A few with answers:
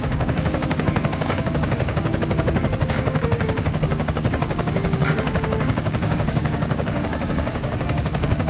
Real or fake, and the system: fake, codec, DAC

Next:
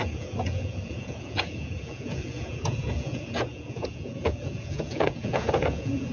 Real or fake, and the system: fake, vocoder, Vocos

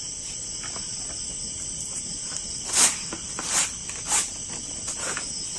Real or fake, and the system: real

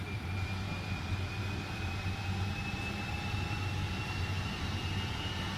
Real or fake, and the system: real